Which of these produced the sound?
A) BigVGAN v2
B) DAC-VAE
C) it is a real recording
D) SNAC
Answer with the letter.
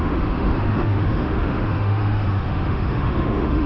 B